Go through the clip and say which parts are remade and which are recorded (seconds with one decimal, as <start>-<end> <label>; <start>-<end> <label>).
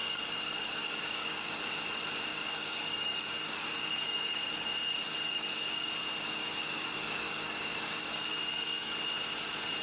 0.0-1.6 remade; 1.6-2.3 recorded; 2.3-5.9 remade; 5.9-6.4 recorded; 6.4-8.9 remade; 8.9-9.8 recorded